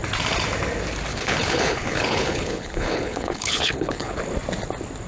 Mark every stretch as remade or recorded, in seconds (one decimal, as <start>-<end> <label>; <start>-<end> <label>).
0.0-1.1 recorded; 1.1-4.2 remade; 4.2-5.1 recorded